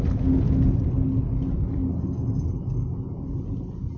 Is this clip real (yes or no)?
yes